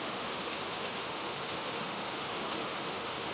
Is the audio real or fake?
fake